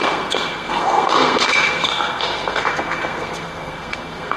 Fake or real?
fake